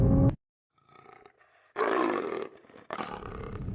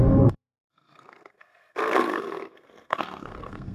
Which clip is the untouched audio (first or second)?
first